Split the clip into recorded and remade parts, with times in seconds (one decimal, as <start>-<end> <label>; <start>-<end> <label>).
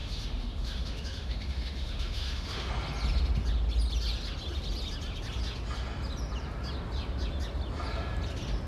0.0-2.7 remade; 2.7-8.7 recorded